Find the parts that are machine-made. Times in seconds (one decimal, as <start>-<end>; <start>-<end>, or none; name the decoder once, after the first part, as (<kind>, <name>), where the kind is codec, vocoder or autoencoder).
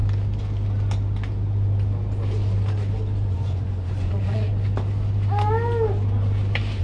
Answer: 3.3-4.5 (vocoder, Vocos)